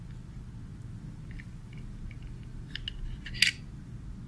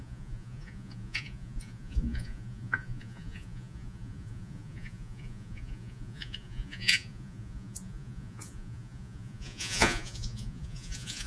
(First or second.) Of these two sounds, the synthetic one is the second